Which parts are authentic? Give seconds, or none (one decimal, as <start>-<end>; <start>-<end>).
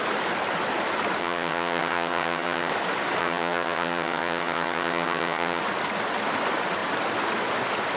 0.0-1.2; 2.7-3.2; 5.6-8.0